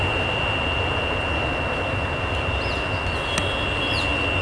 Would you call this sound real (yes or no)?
yes